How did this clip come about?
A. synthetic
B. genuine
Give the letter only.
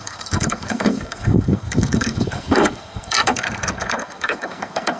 A